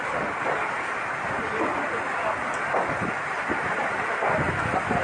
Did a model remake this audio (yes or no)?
no